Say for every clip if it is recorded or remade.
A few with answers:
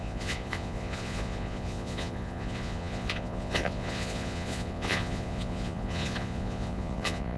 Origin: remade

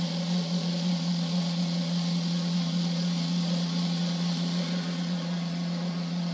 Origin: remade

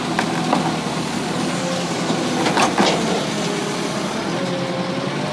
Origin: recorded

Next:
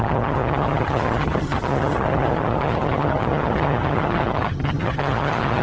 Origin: remade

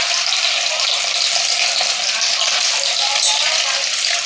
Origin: recorded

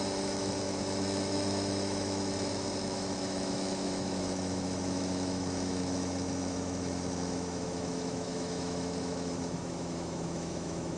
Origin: remade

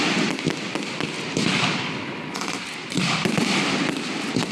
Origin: recorded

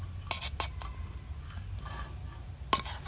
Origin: recorded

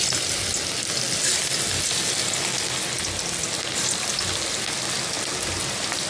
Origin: recorded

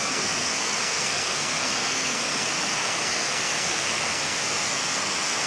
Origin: remade